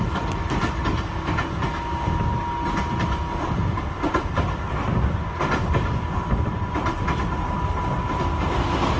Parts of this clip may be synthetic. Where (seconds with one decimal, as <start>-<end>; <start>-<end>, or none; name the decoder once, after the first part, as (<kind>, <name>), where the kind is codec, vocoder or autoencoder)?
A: none